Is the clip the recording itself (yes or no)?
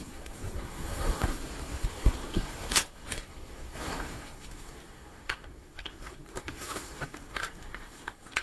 no